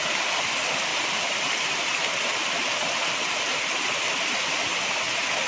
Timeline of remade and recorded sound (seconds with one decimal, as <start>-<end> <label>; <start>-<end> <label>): 0.0-0.9 recorded; 0.9-4.2 remade; 4.2-5.5 recorded